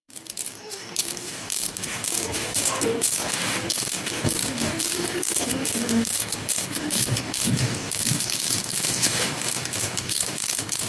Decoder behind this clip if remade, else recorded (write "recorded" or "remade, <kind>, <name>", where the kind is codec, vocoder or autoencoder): remade, codec, DAC